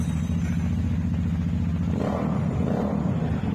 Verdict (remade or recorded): recorded